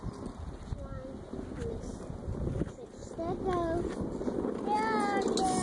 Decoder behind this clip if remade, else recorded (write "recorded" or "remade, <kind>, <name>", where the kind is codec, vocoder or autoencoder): recorded